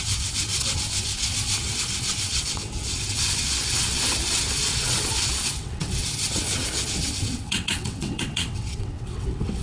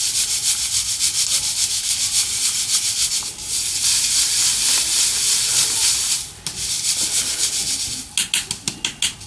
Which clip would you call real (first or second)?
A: second